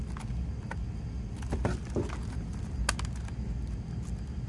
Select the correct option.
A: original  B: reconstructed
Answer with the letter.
A